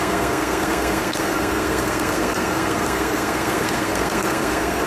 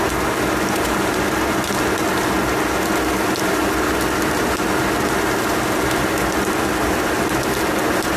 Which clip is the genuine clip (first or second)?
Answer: second